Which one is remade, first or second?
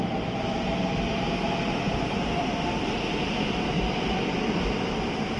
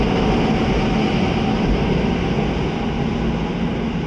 first